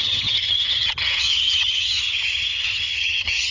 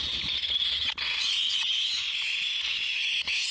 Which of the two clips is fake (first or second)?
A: first